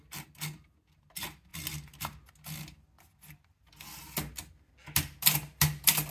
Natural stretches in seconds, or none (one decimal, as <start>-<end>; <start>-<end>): 0.0-6.1